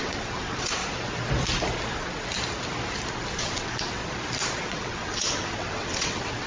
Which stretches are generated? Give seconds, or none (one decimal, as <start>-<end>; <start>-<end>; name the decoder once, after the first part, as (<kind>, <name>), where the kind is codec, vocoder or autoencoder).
0.0-0.8 (vocoder, WaveNeXt); 3.4-4.0; 4.6-6.5